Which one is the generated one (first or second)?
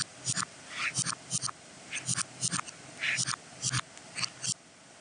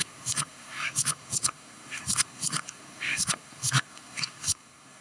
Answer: second